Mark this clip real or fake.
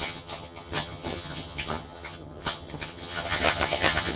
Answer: fake